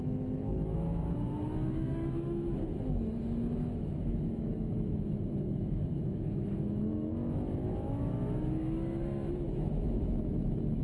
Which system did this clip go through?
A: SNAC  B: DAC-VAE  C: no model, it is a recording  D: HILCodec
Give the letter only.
B